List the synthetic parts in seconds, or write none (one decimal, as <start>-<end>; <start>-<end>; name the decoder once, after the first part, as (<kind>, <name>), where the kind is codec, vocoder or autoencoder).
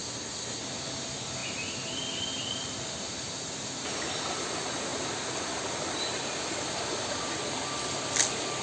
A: 0.0-0.6 (codec, SNAC)